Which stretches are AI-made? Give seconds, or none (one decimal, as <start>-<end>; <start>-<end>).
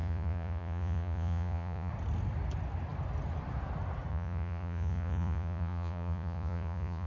0.0-1.9; 4.1-7.1